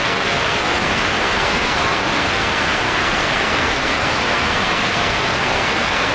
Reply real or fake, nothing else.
fake